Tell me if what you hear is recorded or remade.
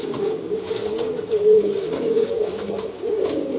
remade